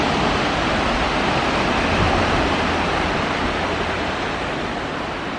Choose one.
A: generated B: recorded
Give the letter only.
A